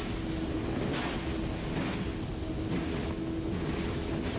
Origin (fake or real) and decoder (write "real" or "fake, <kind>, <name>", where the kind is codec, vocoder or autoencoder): real